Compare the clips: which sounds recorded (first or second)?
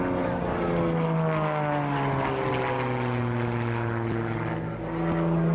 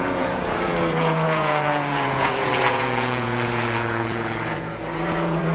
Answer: first